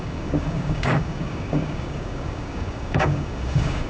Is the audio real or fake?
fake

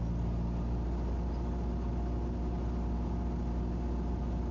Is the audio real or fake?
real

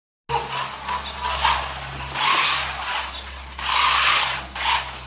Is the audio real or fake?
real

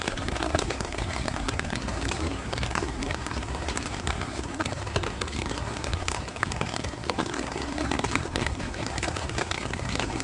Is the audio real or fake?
fake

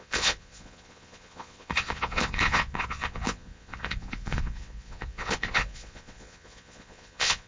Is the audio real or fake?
fake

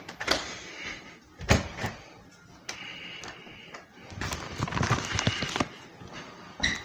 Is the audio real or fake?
real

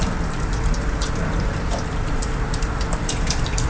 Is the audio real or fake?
fake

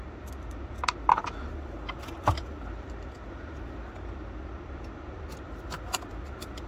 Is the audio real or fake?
real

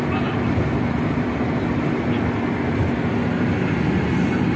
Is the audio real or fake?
real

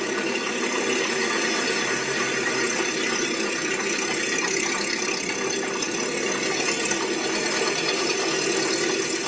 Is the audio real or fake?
real